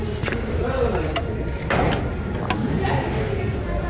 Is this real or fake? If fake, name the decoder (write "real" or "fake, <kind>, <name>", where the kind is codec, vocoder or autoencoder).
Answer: real